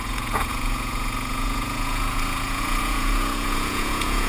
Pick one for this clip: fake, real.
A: fake